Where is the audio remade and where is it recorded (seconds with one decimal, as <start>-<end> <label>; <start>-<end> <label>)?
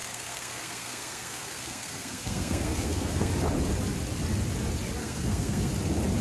0.0-3.3 remade; 3.3-5.0 recorded; 5.0-5.7 remade; 5.7-6.2 recorded